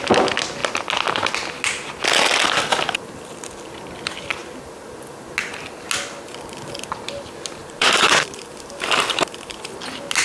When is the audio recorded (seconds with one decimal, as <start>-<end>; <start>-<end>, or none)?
0.0-7.6; 9.6-10.2